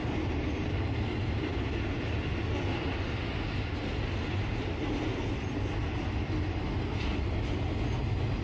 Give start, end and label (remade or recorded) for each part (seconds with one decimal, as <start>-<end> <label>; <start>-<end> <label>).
0.0-8.4 recorded